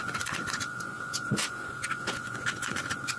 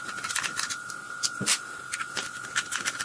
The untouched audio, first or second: second